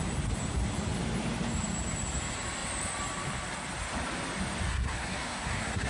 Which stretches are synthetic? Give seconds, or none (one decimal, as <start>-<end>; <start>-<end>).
4.7-5.9